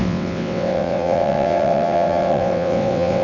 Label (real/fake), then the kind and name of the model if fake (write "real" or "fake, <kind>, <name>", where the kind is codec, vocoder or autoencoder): fake, vocoder, WaveNeXt